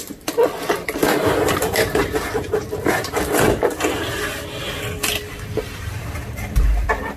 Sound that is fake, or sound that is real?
fake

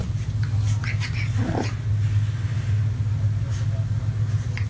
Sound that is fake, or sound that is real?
real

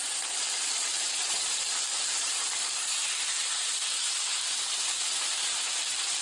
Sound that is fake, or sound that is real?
fake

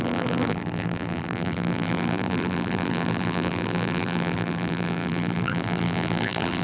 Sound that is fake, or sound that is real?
fake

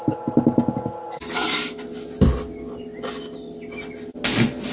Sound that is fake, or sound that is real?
real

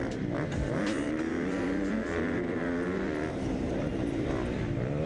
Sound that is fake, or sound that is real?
fake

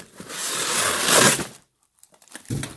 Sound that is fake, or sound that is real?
fake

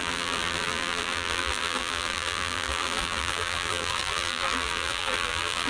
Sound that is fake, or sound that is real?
fake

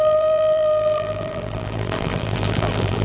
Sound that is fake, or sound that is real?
fake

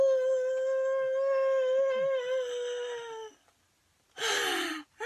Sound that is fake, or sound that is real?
real